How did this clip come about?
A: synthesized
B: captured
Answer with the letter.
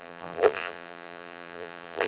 A